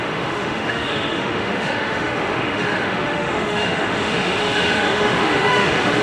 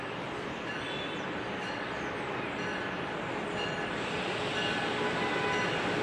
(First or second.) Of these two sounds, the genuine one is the second